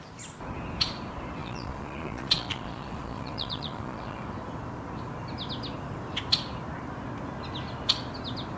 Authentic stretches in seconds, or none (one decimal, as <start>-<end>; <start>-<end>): 0.0-1.4; 4.2-8.6